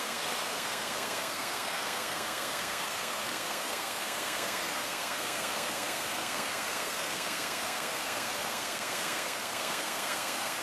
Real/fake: fake